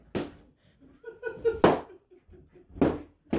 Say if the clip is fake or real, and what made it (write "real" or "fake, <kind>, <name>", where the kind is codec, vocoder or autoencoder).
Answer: real